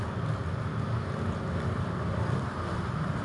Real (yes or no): no